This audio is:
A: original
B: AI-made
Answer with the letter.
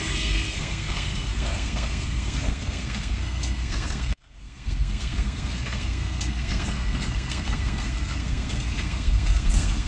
B